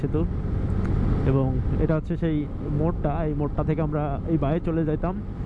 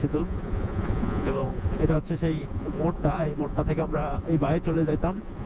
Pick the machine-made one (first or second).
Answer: second